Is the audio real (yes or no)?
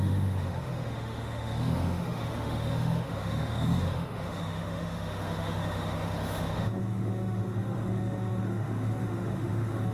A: no